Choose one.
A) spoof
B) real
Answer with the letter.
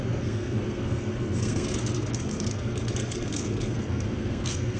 A